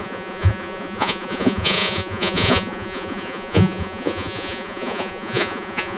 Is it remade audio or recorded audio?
remade